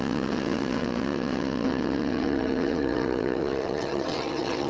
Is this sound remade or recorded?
remade